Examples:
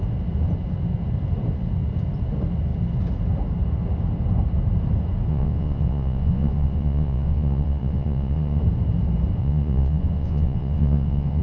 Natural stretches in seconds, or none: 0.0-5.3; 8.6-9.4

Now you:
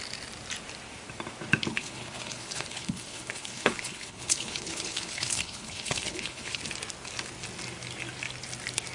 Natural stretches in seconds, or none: 0.0-1.7; 6.6-8.9